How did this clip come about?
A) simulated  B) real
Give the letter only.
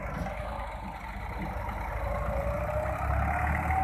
B